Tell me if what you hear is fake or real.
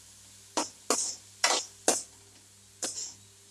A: real